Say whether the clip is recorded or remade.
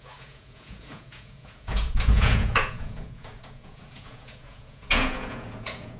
remade